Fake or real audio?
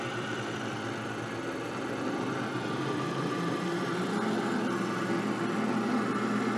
real